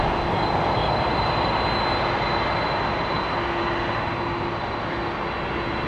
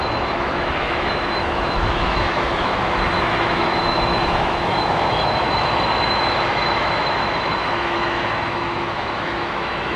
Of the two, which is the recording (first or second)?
first